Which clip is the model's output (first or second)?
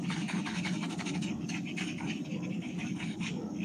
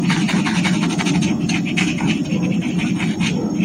first